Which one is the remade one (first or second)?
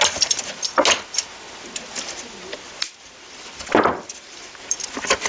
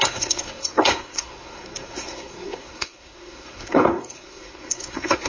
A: second